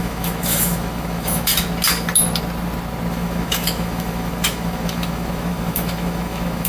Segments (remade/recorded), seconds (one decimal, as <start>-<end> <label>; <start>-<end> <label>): 0.0-1.5 remade; 1.5-3.1 recorded; 3.1-6.7 remade